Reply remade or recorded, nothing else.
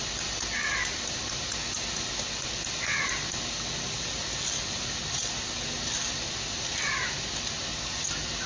recorded